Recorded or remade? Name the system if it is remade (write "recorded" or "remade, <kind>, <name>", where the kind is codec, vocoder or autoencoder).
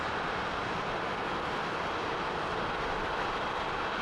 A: recorded